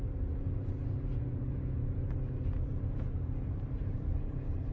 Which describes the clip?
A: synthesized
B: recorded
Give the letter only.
A